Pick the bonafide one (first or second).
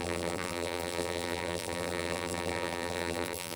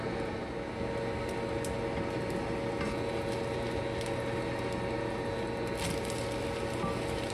second